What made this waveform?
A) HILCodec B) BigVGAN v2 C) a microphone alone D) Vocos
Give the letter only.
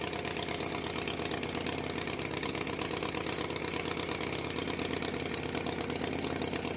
C